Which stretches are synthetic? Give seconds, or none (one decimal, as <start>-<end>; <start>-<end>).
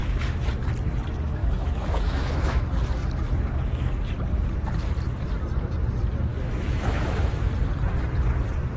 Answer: 0.0-0.5; 1.4-2.6; 6.3-7.5